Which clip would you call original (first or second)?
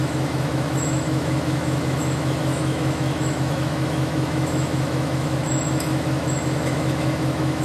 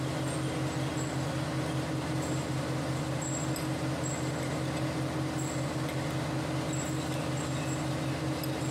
second